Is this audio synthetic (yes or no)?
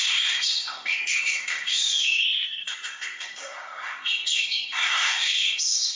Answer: yes